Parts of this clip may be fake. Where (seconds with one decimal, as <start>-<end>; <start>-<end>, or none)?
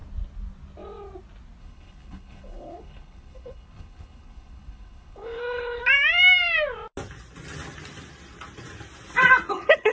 1.6-5.8; 9.5-9.9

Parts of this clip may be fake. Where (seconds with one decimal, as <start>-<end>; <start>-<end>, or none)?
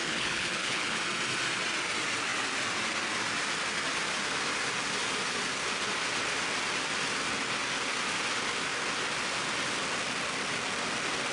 0.0-1.0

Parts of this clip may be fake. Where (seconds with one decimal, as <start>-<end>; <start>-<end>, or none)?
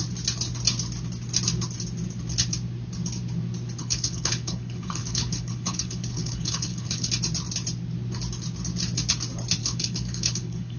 3.8-7.1; 9.6-10.8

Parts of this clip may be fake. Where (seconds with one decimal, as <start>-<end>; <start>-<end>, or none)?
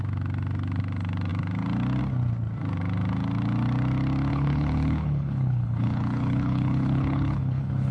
4.3-7.9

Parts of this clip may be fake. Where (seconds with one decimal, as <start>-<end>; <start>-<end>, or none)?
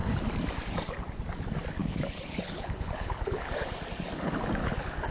1.8-3.5; 4.6-5.1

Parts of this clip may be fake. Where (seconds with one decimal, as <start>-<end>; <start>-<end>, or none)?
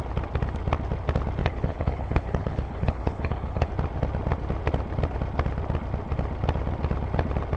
1.4-3.7